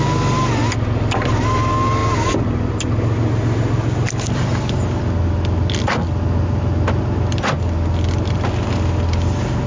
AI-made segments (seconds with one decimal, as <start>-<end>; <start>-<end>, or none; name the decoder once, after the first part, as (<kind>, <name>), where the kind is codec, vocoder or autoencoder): none

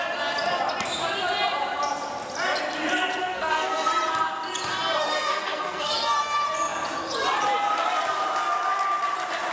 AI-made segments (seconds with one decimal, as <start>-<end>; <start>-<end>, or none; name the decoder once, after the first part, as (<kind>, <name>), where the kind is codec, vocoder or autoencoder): 3.2-3.9 (codec, SNAC); 5.1-5.9

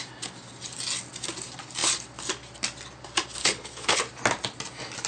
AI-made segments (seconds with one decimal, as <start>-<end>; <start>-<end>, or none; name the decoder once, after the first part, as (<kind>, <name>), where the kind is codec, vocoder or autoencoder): 3.4-4.0 (codec, HILCodec)

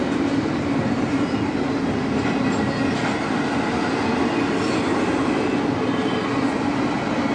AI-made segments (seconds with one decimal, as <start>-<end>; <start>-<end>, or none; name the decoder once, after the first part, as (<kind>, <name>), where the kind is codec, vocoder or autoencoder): none

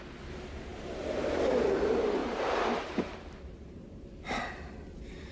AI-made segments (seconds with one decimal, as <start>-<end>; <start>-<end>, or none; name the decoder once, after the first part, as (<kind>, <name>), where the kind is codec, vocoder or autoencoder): 0.7-1.4 (vocoder, BigVGAN v2); 2.2-4.1

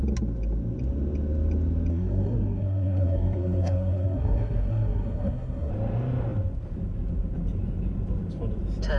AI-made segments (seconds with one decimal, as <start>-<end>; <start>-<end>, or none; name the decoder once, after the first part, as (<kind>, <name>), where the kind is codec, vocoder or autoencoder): 1.9-5.7 (codec, SNAC)

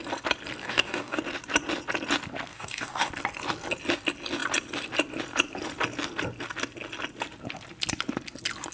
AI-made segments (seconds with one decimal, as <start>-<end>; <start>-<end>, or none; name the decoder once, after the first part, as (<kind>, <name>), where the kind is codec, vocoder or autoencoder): 0.6-1.2 (codec, DAC); 2.5-3.1